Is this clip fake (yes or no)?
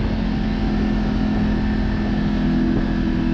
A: no